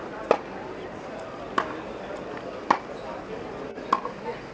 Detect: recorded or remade recorded